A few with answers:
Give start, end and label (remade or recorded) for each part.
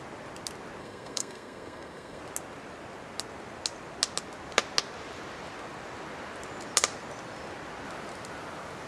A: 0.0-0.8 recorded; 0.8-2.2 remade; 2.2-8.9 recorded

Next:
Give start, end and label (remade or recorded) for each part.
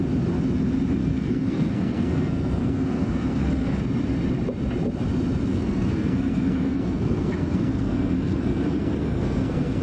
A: 0.0-1.0 recorded; 1.0-3.8 remade; 3.8-5.5 recorded; 5.5-9.8 remade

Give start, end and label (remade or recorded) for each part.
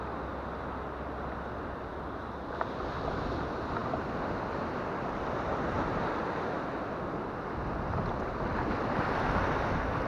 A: 0.0-10.1 recorded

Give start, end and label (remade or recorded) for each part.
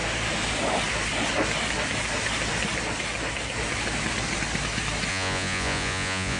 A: 0.0-5.1 recorded; 5.1-6.4 remade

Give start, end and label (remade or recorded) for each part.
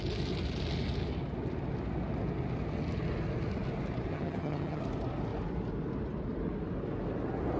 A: 0.0-4.1 recorded; 4.1-4.8 remade; 4.8-7.6 recorded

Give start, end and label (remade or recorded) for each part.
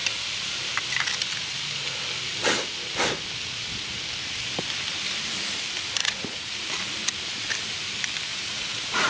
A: 0.0-6.0 recorded; 6.0-6.5 remade; 6.5-8.3 recorded; 8.3-9.1 remade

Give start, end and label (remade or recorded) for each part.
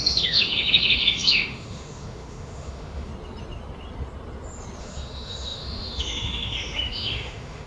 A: 0.0-3.1 remade; 3.1-4.8 recorded; 4.8-7.7 remade